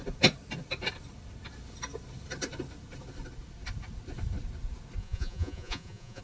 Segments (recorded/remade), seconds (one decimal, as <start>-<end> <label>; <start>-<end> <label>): 0.0-5.0 recorded; 5.0-6.2 remade